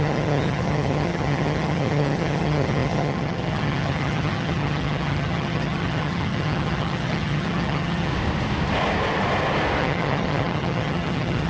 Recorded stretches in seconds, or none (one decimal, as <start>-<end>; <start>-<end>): 8.1-9.8